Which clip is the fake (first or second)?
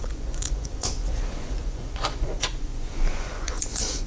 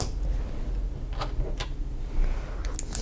first